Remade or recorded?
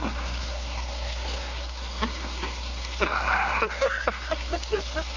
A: remade